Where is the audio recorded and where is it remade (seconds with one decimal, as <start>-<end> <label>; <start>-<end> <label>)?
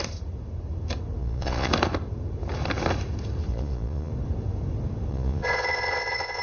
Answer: 0.0-1.2 recorded; 1.2-1.7 remade; 1.7-3.5 recorded; 3.5-4.1 remade; 4.1-5.1 recorded; 5.1-6.4 remade